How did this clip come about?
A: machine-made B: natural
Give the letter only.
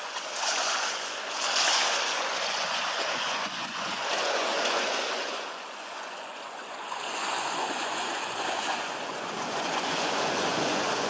A